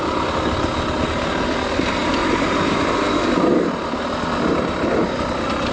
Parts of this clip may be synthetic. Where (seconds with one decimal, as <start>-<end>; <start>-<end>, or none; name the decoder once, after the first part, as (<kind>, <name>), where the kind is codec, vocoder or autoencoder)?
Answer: none